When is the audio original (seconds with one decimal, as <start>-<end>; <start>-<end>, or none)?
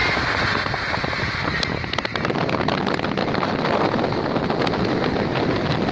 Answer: 0.0-3.2; 4.2-5.9